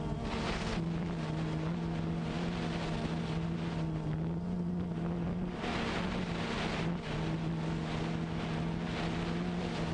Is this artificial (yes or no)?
no